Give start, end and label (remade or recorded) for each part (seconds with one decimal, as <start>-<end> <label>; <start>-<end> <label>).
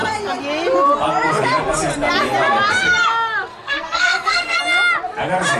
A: 0.0-3.5 recorded; 3.5-4.6 remade; 4.6-5.6 recorded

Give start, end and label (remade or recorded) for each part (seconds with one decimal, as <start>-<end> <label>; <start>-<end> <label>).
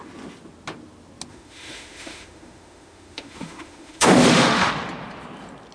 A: 0.0-1.3 recorded; 1.3-4.7 remade; 4.7-5.7 recorded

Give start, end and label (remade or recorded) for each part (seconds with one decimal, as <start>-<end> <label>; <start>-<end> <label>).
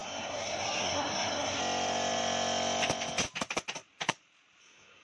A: 0.0-1.6 remade; 1.6-4.6 recorded; 4.6-5.0 remade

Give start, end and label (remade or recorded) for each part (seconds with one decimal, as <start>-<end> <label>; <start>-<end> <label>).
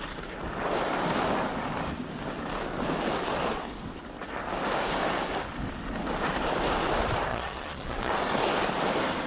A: 0.0-7.3 recorded; 7.3-8.1 remade; 8.1-9.3 recorded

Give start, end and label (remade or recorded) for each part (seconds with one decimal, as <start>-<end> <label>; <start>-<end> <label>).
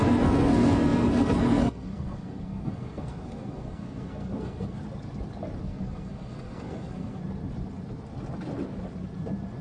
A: 0.0-4.8 remade; 4.8-5.6 recorded; 5.6-7.2 remade; 7.2-9.6 recorded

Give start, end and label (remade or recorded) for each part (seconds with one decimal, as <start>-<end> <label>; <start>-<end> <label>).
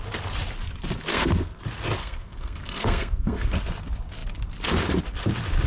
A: 0.0-1.1 recorded; 1.1-1.6 remade; 1.6-2.0 recorded; 2.0-3.7 remade; 3.7-5.7 recorded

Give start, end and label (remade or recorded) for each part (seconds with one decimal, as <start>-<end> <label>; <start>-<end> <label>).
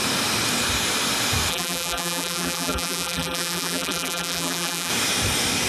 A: 0.0-1.5 recorded; 1.5-4.9 remade; 4.9-5.7 recorded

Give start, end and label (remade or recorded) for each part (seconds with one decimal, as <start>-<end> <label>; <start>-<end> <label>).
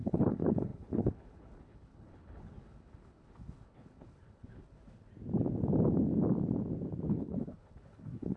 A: 0.0-5.1 remade; 5.1-7.1 recorded; 7.1-8.4 remade